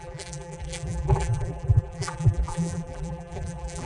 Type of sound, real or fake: fake